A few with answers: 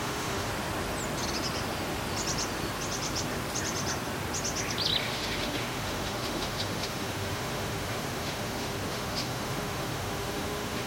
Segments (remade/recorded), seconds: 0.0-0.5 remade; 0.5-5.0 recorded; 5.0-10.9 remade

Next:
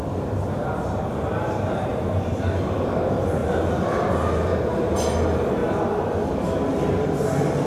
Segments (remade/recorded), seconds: 0.0-1.9 remade; 1.9-2.5 recorded; 2.5-5.6 remade; 5.6-7.7 recorded

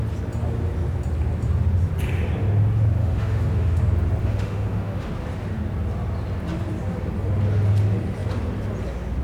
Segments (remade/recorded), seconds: 0.0-3.0 recorded; 3.0-3.8 remade; 3.8-4.2 recorded; 4.2-5.1 remade; 5.1-9.2 recorded

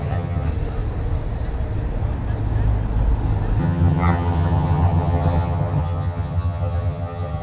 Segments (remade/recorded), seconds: 0.0-0.5 remade; 0.5-3.6 recorded; 3.6-7.4 remade